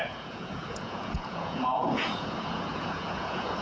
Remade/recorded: remade